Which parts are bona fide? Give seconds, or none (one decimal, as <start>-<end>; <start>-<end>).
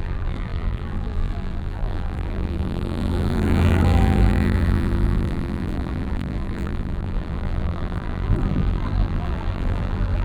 none